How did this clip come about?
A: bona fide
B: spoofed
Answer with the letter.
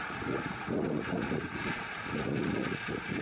B